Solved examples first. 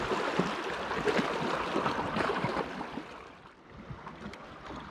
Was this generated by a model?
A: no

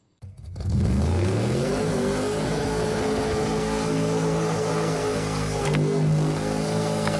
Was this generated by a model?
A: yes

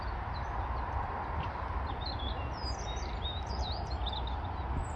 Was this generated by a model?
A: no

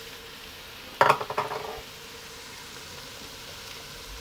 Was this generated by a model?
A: no